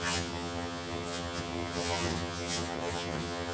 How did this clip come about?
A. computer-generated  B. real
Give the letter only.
A